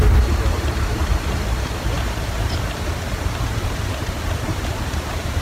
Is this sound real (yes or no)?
no